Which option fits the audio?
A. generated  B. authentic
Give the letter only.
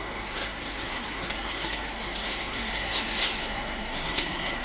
A